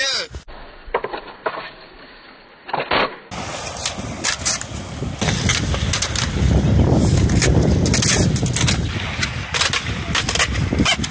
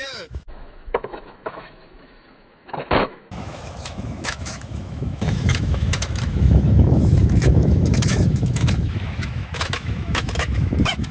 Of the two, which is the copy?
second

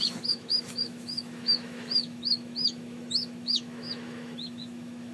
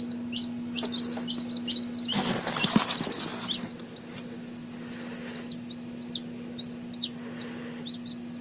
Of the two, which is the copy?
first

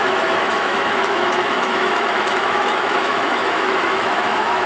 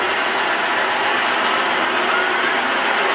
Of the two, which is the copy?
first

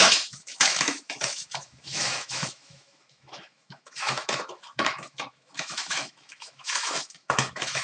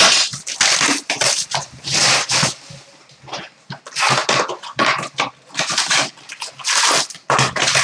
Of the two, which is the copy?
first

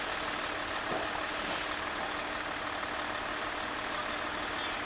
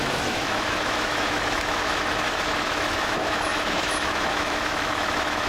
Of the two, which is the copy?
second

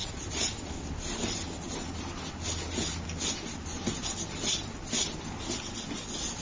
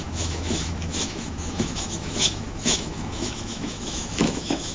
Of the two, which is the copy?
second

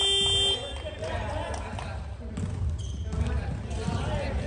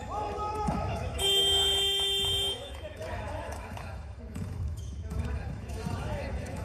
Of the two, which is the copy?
second